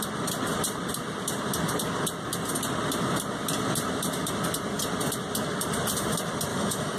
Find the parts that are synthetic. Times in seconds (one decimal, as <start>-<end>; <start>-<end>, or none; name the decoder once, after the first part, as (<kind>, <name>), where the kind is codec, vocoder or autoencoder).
6.5-7.0 (autoencoder, DAC-VAE)

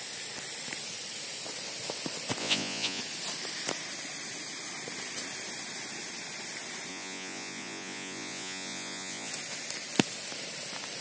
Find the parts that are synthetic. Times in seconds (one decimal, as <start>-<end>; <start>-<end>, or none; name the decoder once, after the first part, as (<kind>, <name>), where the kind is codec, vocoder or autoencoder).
2.4-3.0 (vocoder, Vocos); 6.9-9.3

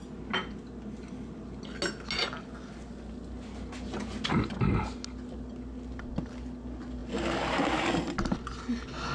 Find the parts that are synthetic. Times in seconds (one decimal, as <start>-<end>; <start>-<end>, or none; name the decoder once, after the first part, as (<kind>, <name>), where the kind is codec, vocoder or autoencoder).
none

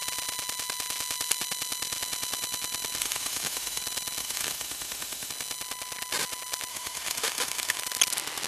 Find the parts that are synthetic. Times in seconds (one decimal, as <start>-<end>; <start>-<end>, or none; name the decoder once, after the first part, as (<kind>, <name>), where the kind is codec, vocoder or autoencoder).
3.0-3.8 (autoencoder, DAC-VAE); 4.2-5.3; 6.7-7.8

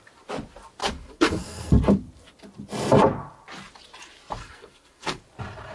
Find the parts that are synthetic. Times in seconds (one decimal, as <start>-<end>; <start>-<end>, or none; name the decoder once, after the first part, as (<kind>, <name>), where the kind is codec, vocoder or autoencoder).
0.8-1.7 (codec, SNAC); 4.4-5.2